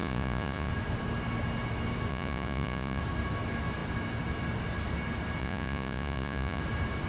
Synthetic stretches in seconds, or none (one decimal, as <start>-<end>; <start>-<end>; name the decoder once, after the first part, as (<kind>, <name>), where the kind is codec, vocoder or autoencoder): 0.0-0.7 (vocoder, Vocos); 2.1-3.0; 5.4-6.6